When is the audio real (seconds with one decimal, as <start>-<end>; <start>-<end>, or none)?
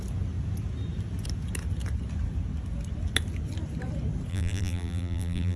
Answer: 0.0-4.3